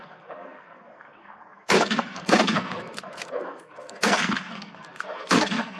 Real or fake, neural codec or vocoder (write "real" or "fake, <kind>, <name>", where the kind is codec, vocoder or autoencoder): fake, codec, SNAC